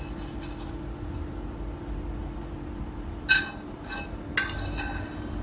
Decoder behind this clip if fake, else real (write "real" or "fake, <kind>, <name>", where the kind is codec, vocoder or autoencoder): real